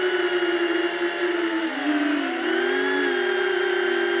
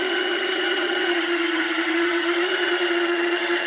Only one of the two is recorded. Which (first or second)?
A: first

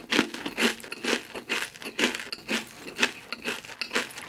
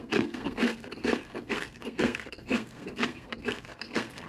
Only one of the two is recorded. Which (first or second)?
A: first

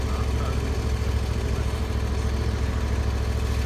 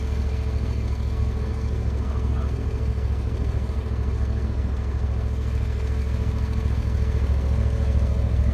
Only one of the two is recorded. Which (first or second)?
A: first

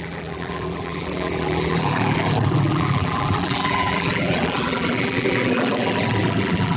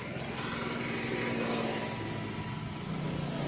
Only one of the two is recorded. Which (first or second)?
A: second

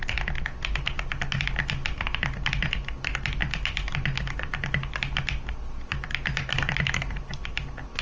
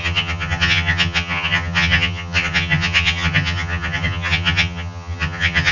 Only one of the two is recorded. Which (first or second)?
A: first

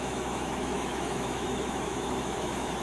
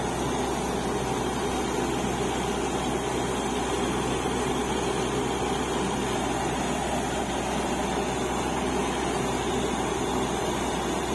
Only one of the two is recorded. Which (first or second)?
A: second